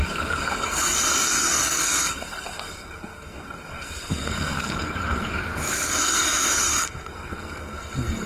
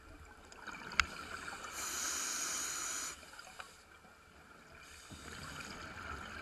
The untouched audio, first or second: second